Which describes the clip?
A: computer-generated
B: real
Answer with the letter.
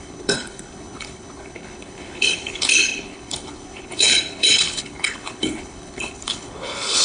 A